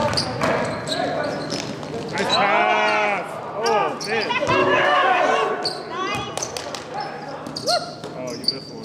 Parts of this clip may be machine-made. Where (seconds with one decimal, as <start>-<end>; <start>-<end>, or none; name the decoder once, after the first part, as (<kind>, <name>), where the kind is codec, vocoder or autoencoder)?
4.6-5.2 (codec, DAC)